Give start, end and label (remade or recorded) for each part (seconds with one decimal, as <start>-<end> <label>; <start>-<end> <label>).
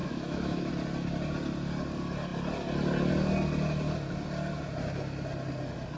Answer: 0.0-0.7 remade; 0.7-6.0 recorded